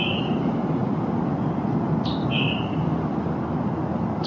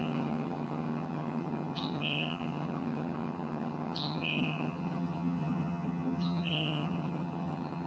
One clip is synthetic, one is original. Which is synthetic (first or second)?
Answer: second